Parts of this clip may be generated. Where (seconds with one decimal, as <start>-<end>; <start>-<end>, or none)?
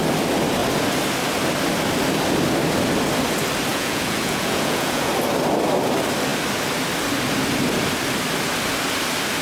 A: 3.7-5.1